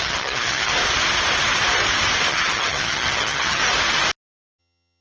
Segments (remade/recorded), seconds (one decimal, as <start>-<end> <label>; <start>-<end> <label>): 0.0-0.7 remade; 0.7-2.3 recorded; 2.3-3.6 remade; 3.6-4.6 recorded; 4.6-5.0 remade